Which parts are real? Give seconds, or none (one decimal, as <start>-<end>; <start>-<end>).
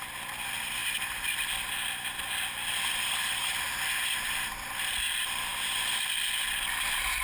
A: 0.0-7.2